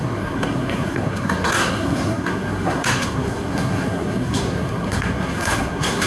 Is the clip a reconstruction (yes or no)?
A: yes